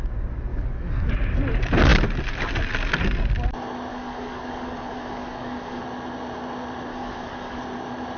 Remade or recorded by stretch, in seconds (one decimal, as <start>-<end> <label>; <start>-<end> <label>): 0.0-0.5 recorded; 0.5-1.1 remade; 1.1-3.9 recorded; 3.9-5.8 remade; 5.8-6.9 recorded; 6.9-7.6 remade; 7.6-8.2 recorded